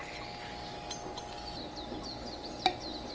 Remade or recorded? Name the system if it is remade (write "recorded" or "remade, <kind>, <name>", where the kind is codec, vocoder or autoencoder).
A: recorded